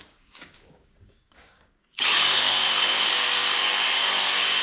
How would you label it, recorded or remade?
remade